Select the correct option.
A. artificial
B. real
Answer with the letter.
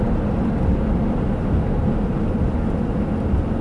B